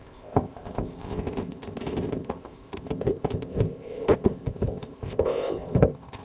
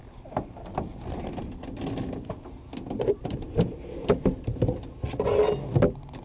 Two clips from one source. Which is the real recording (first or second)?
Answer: second